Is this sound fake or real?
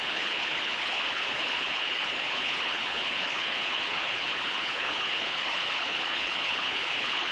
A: fake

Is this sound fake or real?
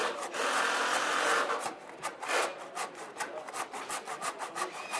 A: real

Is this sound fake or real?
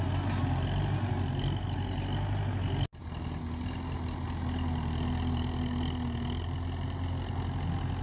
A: real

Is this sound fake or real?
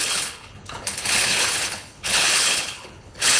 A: fake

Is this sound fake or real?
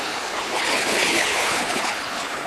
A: fake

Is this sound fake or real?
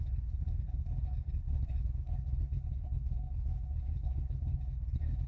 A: fake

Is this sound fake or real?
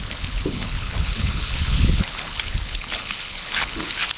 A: fake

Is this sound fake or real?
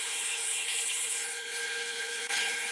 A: fake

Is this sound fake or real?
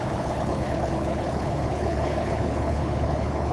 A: fake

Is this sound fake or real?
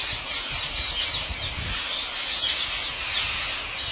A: real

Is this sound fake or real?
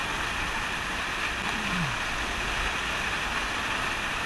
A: real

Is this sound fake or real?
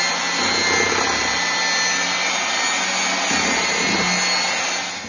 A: real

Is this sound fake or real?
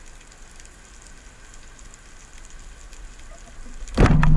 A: real